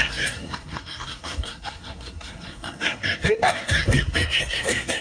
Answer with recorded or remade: remade